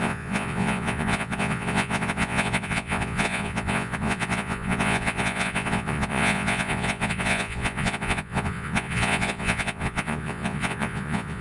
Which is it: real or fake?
fake